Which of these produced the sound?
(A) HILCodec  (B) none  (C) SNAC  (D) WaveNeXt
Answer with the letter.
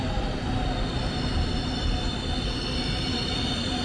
B